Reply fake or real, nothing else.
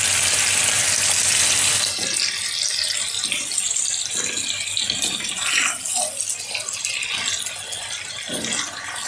real